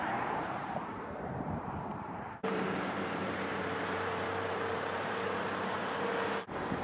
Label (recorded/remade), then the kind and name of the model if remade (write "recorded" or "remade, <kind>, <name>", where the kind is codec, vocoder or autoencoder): remade, vocoder, BigVGAN v2